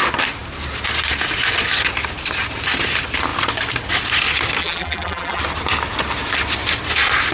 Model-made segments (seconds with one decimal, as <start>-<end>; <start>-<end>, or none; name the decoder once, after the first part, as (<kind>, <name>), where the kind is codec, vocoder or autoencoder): 4.6-5.4 (vocoder, BigVGAN v2)